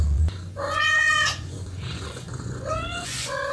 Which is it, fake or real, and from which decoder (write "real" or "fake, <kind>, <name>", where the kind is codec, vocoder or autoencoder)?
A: fake, vocoder, Vocos